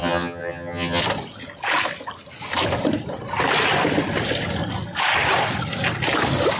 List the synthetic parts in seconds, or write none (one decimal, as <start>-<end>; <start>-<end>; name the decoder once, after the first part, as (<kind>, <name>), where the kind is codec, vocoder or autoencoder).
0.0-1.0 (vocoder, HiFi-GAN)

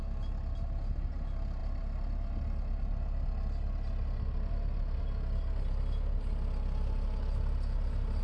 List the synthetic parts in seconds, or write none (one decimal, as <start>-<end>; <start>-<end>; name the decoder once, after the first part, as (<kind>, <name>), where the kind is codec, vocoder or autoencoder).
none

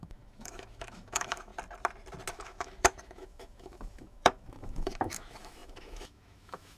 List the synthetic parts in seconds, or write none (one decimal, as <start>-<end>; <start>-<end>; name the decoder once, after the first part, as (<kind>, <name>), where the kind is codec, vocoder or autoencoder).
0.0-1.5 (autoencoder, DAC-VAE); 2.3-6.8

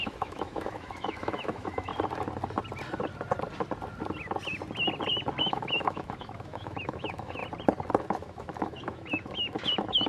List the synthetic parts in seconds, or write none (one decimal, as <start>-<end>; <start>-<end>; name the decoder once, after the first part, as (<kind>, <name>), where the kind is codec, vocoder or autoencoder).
0.0-1.9 (autoencoder, DAC-VAE); 5.4-7.4; 8.0-10.1

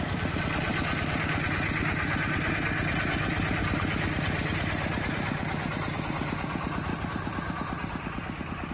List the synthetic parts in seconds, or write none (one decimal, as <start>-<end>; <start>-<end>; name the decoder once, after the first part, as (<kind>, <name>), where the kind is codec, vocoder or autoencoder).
6.9-8.7 (vocoder, BigVGAN v2)

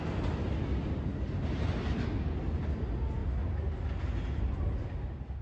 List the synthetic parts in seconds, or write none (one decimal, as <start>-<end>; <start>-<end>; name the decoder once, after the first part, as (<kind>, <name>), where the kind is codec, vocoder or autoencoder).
none